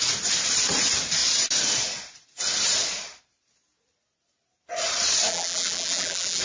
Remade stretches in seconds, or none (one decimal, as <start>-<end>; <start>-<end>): 5.3-6.4